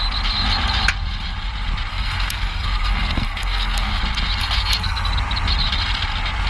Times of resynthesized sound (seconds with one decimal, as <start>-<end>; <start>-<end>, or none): 1.9-4.0; 4.4-5.1